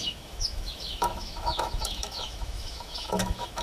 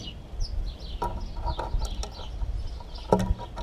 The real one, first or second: second